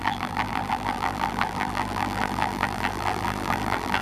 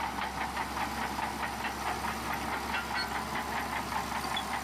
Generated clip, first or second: first